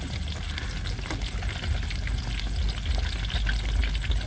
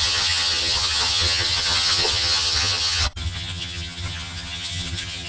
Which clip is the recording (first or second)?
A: first